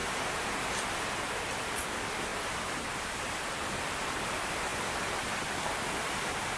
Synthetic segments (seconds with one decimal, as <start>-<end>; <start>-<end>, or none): 1.2-6.6